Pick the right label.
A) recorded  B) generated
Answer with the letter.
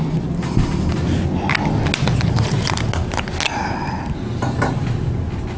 A